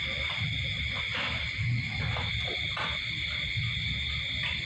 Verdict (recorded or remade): recorded